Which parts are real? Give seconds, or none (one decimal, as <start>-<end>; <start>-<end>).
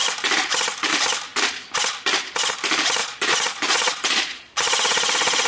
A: 0.0-3.0